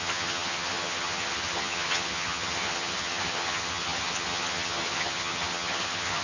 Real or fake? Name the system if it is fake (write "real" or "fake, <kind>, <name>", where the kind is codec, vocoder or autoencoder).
fake, vocoder, HiFi-GAN